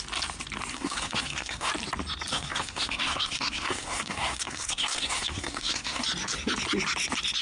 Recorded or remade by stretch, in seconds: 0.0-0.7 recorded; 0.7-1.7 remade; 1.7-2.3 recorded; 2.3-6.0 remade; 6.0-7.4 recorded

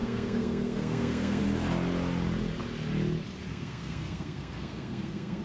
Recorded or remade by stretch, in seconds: 0.0-1.4 remade; 1.4-3.5 recorded; 3.5-5.4 remade

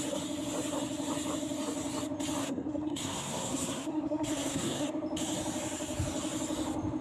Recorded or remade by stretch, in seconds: 0.0-2.4 recorded; 2.4-4.9 remade; 4.9-7.0 recorded